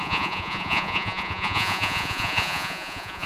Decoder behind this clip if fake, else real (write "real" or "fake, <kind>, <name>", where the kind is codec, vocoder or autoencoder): fake, vocoder, Vocos